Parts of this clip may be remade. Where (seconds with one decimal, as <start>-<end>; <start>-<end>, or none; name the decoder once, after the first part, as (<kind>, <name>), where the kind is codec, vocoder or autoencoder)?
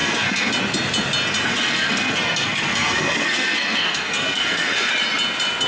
0.0-0.5 (codec, SNAC); 1.5-4.9